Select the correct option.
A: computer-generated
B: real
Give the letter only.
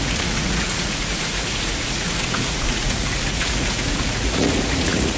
A